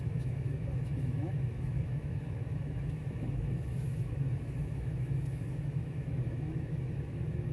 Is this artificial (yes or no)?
yes